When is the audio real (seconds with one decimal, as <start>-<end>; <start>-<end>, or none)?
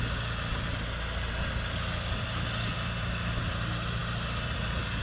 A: 0.0-5.0